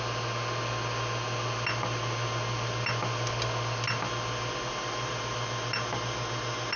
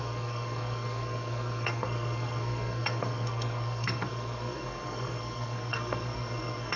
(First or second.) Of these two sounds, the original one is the first